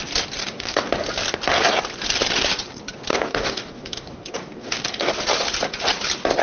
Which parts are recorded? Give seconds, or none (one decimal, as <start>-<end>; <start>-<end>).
0.0-0.4; 0.9-3.1; 5.1-6.4